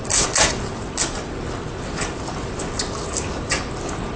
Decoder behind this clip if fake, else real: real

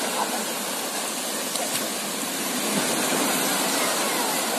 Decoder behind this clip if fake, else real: real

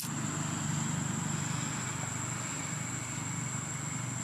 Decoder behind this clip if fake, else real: real